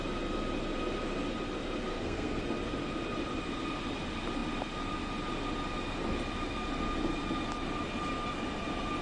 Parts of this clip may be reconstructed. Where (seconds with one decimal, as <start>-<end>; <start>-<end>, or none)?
1.9-2.4